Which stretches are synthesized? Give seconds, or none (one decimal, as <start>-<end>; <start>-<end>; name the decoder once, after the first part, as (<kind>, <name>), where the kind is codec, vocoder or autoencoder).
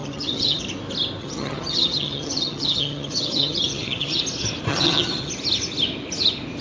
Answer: 0.0-0.6 (vocoder, HiFi-GAN); 1.2-4.2; 4.7-5.3